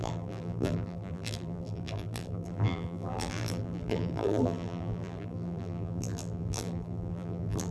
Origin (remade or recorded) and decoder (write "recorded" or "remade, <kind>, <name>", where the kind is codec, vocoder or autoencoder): remade, vocoder, BigVGAN v2